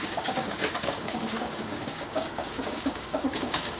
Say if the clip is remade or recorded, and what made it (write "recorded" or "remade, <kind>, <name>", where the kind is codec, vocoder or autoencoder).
remade, codec, DAC